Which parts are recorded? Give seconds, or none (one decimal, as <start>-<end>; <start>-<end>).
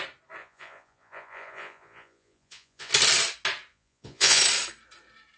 0.0-0.4; 2.9-3.7; 4.4-5.4